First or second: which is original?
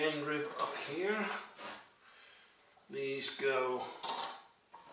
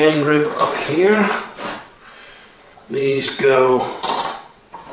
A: first